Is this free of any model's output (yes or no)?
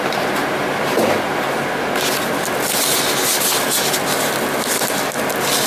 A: yes